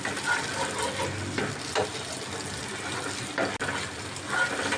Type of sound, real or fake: real